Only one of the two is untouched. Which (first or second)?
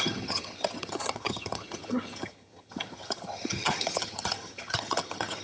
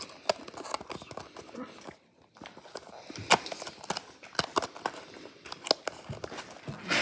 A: second